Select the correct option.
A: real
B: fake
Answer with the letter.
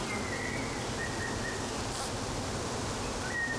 A